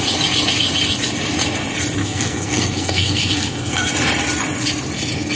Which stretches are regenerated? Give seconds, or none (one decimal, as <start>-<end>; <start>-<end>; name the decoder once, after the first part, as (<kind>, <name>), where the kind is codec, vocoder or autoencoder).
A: 2.0-3.9 (codec, SNAC)